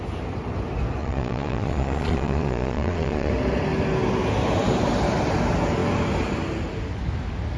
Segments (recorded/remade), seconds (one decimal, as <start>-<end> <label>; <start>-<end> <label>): 0.0-1.0 recorded; 1.0-3.3 remade; 3.3-7.6 recorded